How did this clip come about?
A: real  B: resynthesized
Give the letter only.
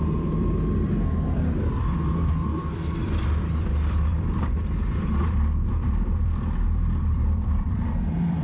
B